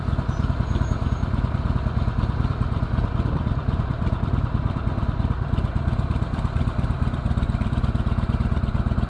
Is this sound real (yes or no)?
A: no